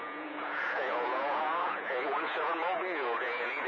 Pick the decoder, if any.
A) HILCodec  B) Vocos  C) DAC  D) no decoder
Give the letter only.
B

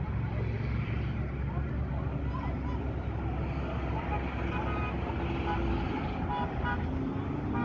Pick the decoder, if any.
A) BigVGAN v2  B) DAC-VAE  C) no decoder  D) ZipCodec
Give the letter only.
C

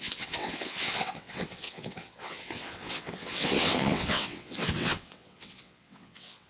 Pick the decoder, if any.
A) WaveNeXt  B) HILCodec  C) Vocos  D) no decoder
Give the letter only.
A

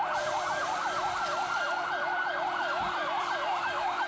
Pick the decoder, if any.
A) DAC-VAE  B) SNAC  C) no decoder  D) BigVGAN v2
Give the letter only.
D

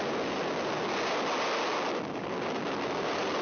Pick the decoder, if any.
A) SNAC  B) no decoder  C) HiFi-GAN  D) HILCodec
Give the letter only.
B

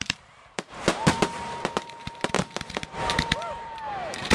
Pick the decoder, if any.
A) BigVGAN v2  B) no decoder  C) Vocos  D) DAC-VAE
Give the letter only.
A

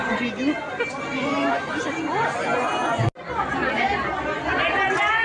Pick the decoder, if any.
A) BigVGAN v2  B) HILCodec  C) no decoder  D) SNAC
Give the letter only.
C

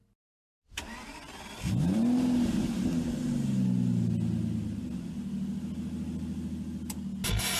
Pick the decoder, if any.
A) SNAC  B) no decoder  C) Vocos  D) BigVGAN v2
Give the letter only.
B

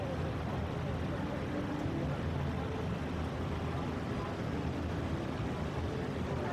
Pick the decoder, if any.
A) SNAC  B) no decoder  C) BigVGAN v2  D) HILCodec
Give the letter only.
B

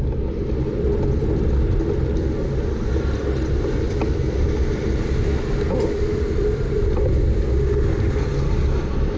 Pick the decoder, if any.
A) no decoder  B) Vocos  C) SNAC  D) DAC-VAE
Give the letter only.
A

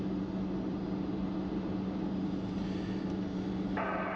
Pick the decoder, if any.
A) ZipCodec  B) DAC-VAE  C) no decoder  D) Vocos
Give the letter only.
C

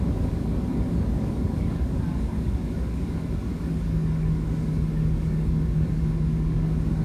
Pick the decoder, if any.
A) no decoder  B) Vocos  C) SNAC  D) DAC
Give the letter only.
D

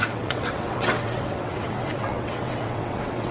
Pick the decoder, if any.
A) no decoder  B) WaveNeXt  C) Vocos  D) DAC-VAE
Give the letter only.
B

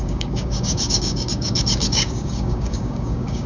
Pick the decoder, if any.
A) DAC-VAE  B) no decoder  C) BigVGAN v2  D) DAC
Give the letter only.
D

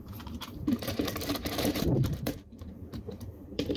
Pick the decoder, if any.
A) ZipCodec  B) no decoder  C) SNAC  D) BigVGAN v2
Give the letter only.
D